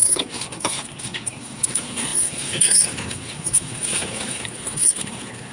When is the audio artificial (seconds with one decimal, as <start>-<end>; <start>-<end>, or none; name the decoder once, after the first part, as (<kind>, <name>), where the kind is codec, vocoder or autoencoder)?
0.0-5.5 (codec, SNAC)